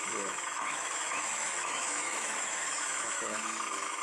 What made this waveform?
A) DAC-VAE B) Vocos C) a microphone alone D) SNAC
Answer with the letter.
A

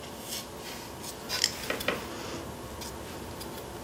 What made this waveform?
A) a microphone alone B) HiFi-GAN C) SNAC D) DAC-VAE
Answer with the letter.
A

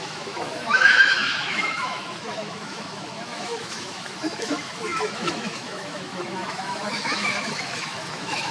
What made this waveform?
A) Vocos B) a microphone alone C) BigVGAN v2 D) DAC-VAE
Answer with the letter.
D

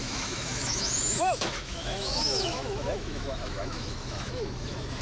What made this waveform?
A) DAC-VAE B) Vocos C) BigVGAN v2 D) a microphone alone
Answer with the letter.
A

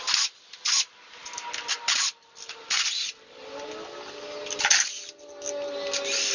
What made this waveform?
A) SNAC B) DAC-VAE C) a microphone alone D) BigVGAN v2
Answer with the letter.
C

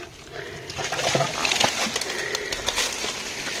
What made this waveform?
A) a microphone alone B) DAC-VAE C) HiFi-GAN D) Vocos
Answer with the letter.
A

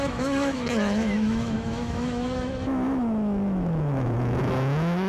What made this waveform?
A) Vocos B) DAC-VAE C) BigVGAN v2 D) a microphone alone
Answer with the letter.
B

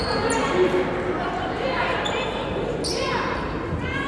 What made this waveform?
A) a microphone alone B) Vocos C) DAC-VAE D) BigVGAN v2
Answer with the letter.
A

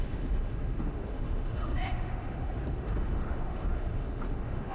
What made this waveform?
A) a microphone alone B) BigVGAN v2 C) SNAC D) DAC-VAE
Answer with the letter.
D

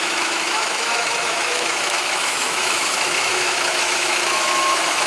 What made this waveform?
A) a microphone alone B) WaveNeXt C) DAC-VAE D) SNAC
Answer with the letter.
C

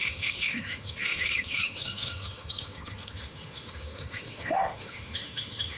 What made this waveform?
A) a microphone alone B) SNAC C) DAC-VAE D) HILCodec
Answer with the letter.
C